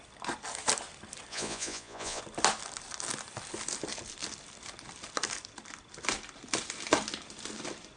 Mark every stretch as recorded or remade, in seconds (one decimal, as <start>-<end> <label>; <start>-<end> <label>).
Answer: 0.0-1.3 recorded; 1.3-2.2 remade; 2.2-8.0 recorded